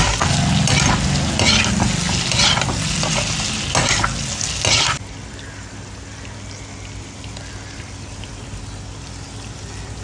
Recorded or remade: recorded